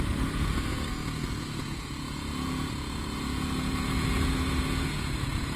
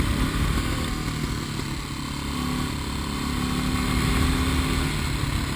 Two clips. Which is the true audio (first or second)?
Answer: second